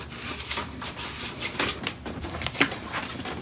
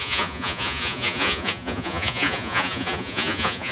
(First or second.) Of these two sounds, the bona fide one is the first